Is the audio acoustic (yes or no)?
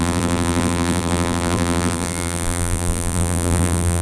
no